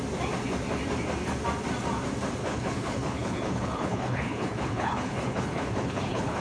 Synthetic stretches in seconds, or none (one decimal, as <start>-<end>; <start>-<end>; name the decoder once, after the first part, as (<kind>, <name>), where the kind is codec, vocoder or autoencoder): 2.4-6.4 (codec, HILCodec)